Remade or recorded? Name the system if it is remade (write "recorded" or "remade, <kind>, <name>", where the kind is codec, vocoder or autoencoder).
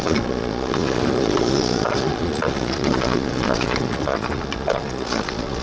remade, vocoder, Vocos